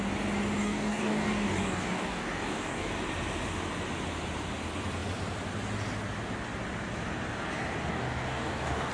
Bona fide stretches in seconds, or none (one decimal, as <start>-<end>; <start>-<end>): 0.0-0.6; 2.9-7.9